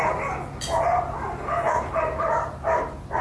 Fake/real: real